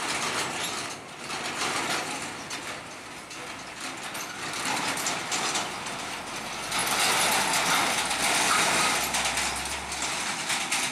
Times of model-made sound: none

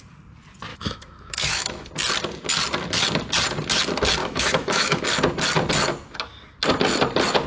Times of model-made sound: 0.7-1.9 (autoencoder, DAC-VAE); 4.2-5.0

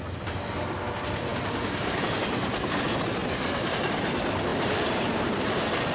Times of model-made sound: none

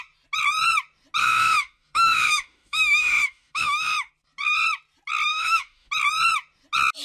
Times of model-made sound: 1.2-4.1 (autoencoder, DAC-VAE); 5.3-5.9

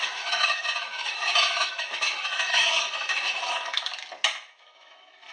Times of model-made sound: 0.0-3.9 (autoencoder, DAC-VAE); 4.4-5.3

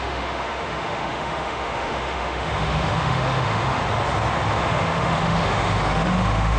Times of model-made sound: 0.0-3.8 (autoencoder, DAC-VAE); 4.5-6.6